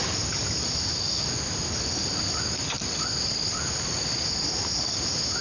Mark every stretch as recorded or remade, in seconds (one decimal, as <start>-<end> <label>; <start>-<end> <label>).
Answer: 0.0-5.4 recorded